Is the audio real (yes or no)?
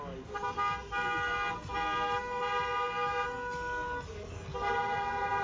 yes